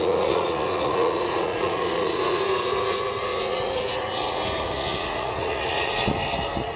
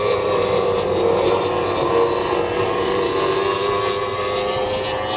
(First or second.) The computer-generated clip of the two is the first